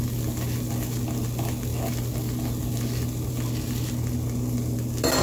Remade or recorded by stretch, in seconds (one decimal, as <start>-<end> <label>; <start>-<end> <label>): 0.0-5.2 recorded